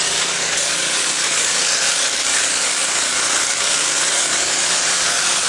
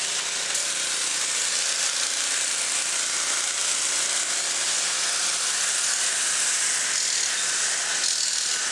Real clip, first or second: second